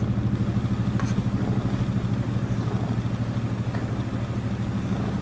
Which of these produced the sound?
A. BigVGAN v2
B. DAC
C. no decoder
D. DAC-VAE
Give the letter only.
C